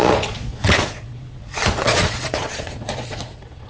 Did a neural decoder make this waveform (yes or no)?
yes